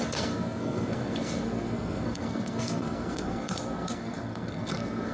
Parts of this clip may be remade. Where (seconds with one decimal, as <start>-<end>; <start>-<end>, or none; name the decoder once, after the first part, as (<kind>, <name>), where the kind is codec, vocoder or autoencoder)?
0.0-5.1 (codec, SNAC)